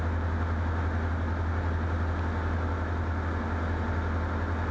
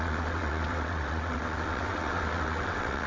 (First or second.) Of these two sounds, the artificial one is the second